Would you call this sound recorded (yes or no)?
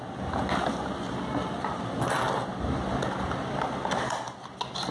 yes